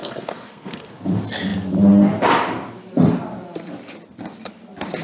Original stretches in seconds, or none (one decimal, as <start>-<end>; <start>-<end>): 0.9-5.0